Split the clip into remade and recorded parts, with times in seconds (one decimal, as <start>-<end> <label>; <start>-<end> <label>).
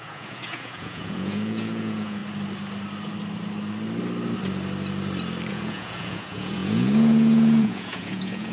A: 0.0-2.2 remade; 2.2-5.5 recorded; 5.5-8.5 remade